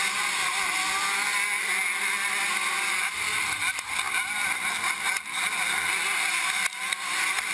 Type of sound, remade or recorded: recorded